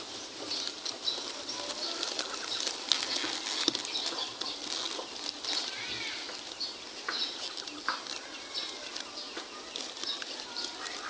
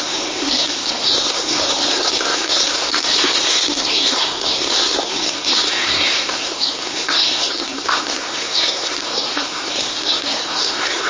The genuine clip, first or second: first